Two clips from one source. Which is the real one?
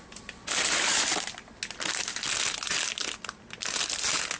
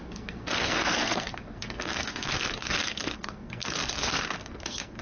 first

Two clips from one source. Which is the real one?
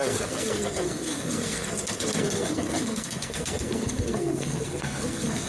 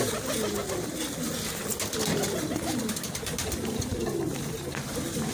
second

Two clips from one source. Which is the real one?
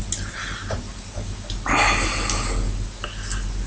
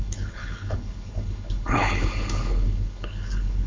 first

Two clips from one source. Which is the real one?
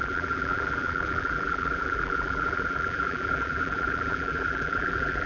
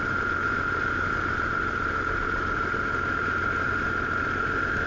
second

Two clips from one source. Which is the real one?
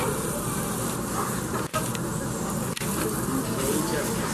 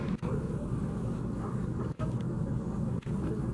first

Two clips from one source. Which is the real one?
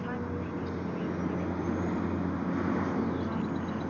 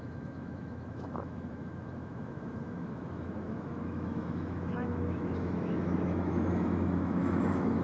first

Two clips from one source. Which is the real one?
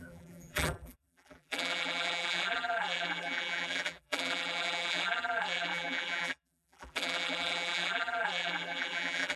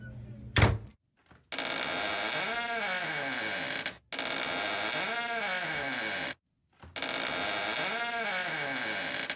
second